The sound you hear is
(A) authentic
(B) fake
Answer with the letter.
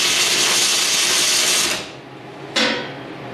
A